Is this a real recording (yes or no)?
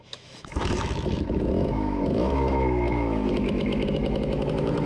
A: no